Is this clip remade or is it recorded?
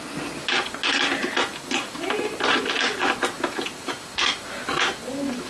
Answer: recorded